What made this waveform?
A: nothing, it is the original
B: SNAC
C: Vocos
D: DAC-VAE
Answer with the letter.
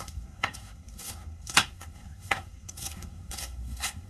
B